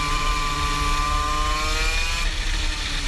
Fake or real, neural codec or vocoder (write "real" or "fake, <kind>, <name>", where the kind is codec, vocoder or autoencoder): real